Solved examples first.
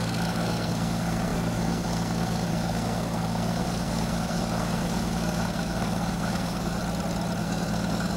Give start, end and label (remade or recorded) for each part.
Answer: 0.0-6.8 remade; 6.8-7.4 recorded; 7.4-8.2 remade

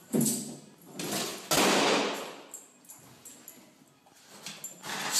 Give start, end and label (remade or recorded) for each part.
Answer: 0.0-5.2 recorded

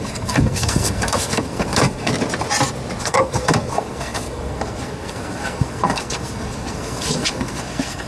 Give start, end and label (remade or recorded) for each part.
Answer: 0.0-2.1 remade; 2.1-3.0 recorded; 3.0-8.1 remade